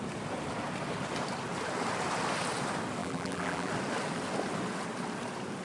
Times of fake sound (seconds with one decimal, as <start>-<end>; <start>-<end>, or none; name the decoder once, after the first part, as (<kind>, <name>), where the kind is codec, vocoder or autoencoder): 3.0-3.7 (vocoder, BigVGAN v2)